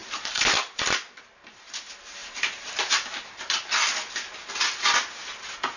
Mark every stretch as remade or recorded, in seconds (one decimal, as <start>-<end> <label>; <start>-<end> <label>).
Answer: 0.0-1.4 remade; 1.4-2.2 recorded; 2.2-3.3 remade; 3.3-5.8 recorded